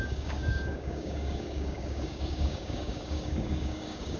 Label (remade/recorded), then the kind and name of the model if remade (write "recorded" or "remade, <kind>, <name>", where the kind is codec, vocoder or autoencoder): remade, codec, DAC